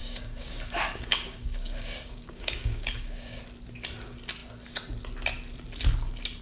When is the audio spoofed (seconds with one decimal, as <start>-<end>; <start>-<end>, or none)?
0.0-3.4